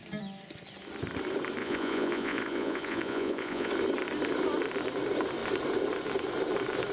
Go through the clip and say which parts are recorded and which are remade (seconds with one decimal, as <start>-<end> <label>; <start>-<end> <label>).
0.0-1.6 recorded; 1.6-3.7 remade; 3.7-6.9 recorded